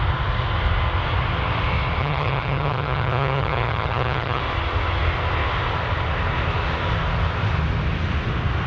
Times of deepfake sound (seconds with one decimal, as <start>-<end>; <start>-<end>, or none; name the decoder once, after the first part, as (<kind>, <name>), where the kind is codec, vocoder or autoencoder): 2.0-4.4 (vocoder, HiFi-GAN)